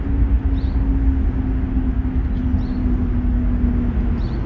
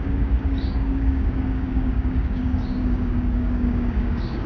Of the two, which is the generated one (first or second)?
second